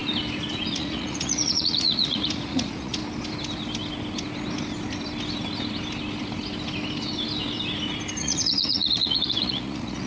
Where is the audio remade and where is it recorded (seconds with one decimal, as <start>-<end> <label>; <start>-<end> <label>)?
0.0-0.7 recorded; 0.7-3.0 remade; 3.0-8.2 recorded; 8.2-10.1 remade